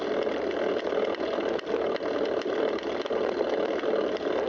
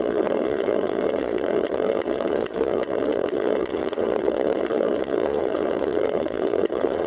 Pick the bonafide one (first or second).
first